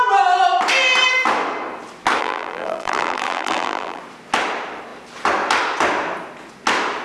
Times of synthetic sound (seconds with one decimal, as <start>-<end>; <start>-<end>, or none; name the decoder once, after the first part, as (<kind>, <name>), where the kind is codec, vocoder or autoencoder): 2.2-4.0 (vocoder, BigVGAN v2)